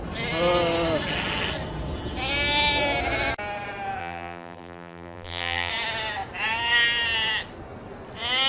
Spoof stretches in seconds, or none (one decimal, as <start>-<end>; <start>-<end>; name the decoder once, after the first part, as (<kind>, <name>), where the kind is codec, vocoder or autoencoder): 4.0-5.7 (vocoder, BigVGAN v2)